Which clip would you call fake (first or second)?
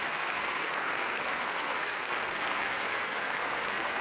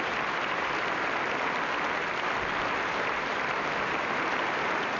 first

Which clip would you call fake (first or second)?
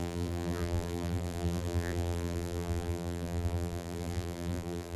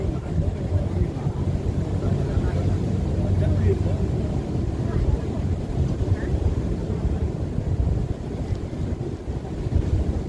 first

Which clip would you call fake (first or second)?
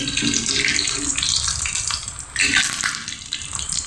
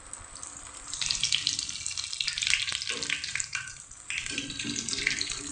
second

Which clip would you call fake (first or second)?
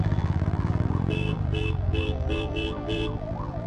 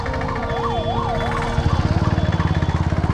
first